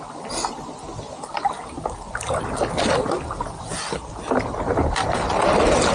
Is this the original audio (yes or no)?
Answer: yes